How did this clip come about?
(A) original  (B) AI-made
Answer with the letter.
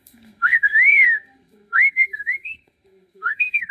B